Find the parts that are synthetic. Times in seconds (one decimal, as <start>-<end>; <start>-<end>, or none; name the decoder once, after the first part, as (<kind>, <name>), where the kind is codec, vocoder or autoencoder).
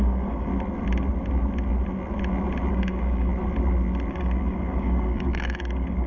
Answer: 0.0-0.5 (codec, DAC); 2.7-3.3; 4.1-6.1